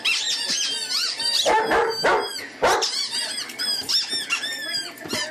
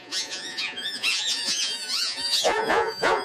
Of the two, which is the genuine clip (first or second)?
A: first